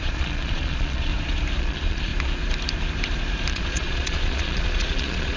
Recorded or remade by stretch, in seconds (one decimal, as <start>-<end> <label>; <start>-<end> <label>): 0.0-1.1 remade; 1.1-1.6 recorded; 1.6-2.1 remade; 2.1-3.5 recorded; 3.5-5.4 remade